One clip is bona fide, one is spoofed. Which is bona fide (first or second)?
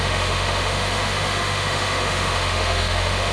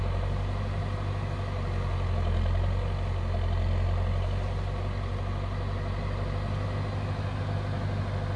second